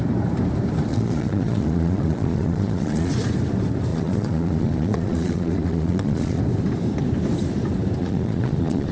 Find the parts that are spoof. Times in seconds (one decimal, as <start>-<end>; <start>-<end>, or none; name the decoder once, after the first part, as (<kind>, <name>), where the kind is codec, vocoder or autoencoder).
0.9-3.1 (vocoder, Vocos); 3.9-6.4; 8.0-8.9